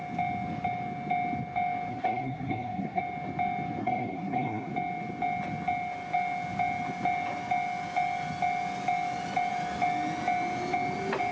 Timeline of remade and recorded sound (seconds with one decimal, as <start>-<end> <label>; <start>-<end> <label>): 0.0-1.9 recorded; 1.9-3.0 remade; 3.0-3.8 recorded; 3.8-4.7 remade; 4.7-11.3 recorded